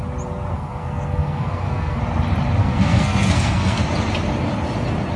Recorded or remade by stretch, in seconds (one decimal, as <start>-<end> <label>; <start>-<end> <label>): 0.0-0.5 recorded; 0.5-2.0 remade; 2.0-2.6 recorded; 2.6-3.8 remade; 3.8-5.2 recorded